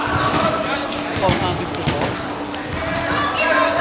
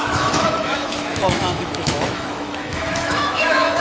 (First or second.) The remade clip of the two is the second